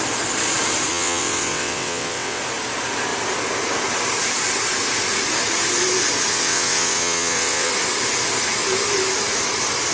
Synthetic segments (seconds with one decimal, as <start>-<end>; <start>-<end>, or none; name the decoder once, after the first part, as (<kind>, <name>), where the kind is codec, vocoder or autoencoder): 0.9-2.4 (vocoder, WaveNeXt); 6.3-7.7